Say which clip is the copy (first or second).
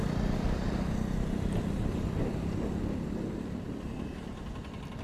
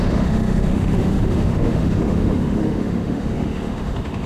second